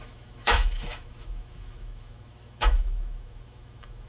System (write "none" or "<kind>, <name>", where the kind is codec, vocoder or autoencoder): autoencoder, DAC-VAE